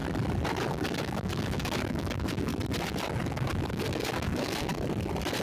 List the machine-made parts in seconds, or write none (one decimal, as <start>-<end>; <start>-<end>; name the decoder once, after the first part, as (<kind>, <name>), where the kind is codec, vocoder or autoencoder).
0.7-2.5 (codec, DAC); 3.3-4.7